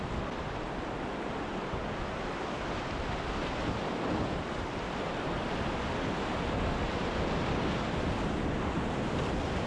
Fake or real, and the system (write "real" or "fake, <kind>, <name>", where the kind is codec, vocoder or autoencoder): real